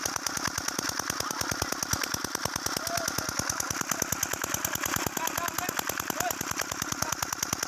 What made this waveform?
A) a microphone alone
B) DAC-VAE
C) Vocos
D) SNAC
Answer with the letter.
A